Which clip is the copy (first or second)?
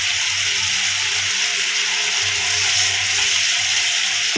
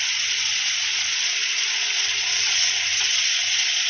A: second